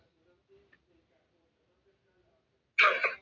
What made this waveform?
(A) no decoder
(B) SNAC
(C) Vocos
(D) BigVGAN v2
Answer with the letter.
A